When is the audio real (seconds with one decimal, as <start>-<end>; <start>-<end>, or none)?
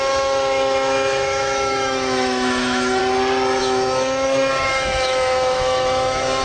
3.0-3.6